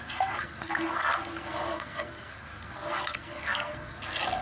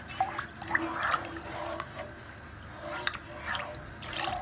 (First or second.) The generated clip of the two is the first